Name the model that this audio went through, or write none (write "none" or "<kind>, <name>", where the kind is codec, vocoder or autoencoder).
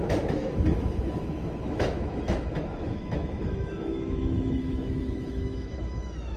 autoencoder, DAC-VAE